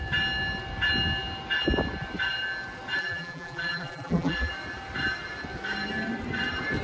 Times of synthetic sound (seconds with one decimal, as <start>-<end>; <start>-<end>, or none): 3.0-4.5